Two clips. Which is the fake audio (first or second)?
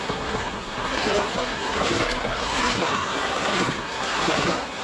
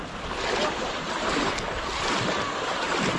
first